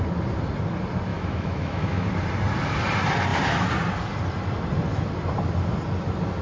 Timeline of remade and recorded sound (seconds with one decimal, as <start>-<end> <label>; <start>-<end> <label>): 0.0-1.1 recorded; 1.1-2.1 remade; 2.1-6.4 recorded